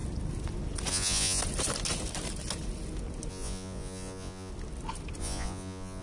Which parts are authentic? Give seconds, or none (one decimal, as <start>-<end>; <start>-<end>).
0.0-0.9; 1.4-3.3; 4.5-5.2